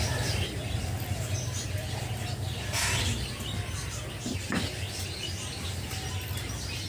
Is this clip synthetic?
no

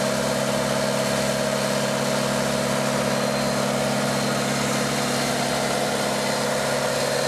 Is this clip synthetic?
no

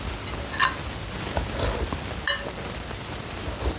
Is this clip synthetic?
no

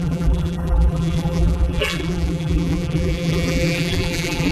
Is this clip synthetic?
yes